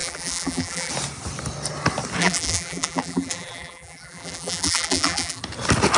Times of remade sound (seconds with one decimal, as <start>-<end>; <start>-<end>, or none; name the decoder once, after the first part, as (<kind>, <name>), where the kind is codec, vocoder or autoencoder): 0.0-0.9 (vocoder, BigVGAN v2); 2.2-5.4